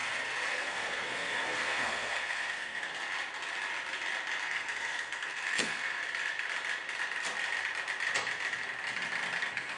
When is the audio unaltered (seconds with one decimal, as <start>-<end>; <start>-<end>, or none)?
0.0-0.5; 2.9-4.4; 6.0-9.4

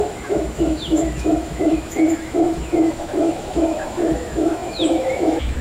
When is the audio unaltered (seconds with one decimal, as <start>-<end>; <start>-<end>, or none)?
none

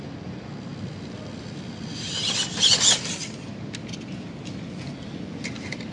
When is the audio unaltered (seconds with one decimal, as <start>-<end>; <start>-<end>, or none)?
0.0-5.9

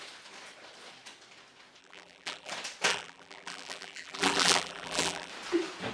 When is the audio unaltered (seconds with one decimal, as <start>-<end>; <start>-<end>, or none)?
0.0-1.8; 2.5-2.9; 5.3-5.9

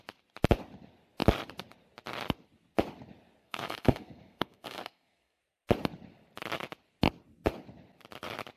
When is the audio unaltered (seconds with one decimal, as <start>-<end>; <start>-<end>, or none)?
0.0-3.4; 5.4-8.6

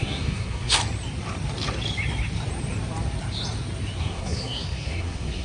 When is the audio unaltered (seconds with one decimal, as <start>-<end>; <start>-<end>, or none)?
0.8-4.0

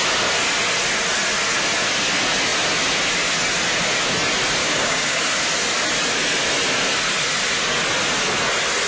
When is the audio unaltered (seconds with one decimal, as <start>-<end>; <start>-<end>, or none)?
0.0-4.6; 5.2-8.9

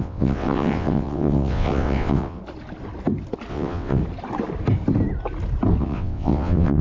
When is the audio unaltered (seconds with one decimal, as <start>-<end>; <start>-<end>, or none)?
2.4-3.5; 4.0-5.8